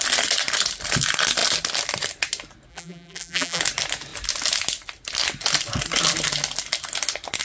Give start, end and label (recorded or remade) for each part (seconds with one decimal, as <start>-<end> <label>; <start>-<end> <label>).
0.0-2.7 recorded; 2.7-3.6 remade; 3.6-7.4 recorded